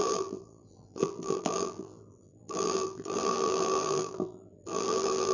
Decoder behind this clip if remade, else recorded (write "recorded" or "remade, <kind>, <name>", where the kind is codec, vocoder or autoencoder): remade, vocoder, BigVGAN v2